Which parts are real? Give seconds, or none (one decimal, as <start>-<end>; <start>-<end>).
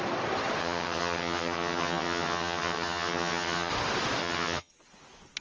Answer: 0.0-0.6; 3.7-4.2; 4.7-5.4